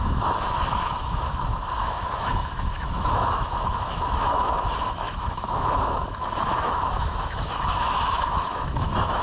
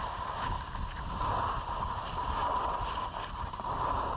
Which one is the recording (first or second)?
second